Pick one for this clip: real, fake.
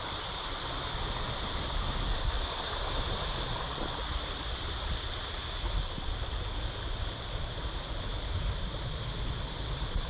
real